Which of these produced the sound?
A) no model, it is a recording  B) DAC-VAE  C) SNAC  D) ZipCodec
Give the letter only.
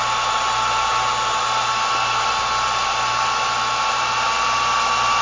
A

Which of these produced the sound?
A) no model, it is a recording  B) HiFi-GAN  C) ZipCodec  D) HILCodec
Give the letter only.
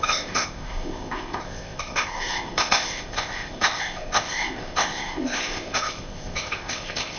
C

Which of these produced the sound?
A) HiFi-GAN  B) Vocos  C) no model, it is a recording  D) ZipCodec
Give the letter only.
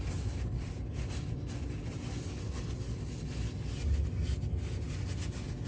C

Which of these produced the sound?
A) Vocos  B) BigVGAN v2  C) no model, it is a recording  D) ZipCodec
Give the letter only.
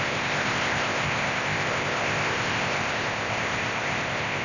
D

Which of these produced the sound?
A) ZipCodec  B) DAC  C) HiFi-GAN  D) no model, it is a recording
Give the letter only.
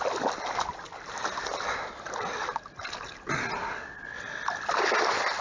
D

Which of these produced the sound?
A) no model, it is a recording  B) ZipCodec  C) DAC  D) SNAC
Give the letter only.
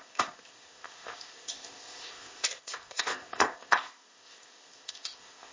B